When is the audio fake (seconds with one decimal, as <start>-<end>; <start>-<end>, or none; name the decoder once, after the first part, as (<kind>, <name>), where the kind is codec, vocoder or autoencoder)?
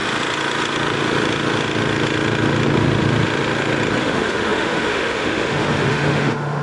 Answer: 4.0-6.6 (autoencoder, DAC-VAE)